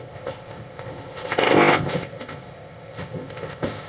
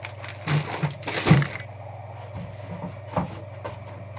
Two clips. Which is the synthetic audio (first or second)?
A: first